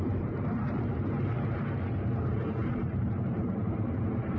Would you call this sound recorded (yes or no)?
no